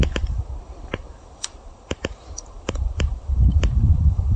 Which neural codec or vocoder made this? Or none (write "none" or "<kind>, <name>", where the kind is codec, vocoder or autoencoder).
vocoder, BigVGAN v2